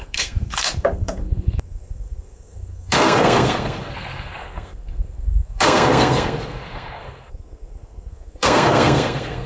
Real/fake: fake